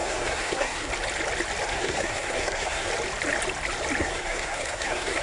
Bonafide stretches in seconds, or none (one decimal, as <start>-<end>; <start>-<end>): 0.9-1.7; 2.9-4.0